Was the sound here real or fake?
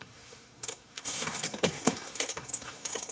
fake